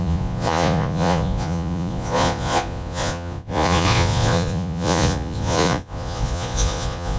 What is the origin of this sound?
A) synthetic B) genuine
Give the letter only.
A